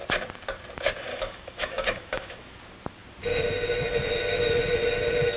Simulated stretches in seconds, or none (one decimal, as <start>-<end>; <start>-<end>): 1.1-2.5